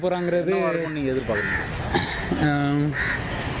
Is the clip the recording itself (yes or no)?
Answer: yes